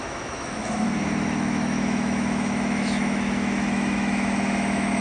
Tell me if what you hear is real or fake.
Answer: fake